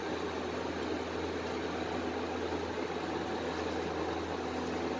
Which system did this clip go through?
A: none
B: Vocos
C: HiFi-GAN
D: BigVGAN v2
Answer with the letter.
A